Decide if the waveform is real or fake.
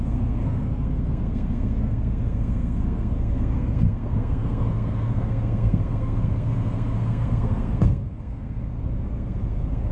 fake